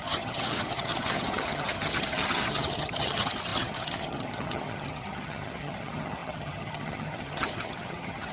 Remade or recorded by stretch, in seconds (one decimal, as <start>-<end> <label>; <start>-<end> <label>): 0.0-8.3 remade